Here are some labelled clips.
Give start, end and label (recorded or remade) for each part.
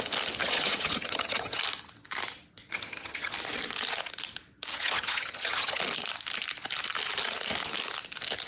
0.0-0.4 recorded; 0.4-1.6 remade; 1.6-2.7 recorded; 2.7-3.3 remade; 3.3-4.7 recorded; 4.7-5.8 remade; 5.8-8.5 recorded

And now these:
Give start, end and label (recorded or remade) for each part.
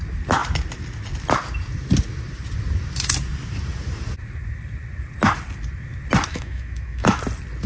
0.0-6.3 recorded; 6.3-7.2 remade; 7.2-7.7 recorded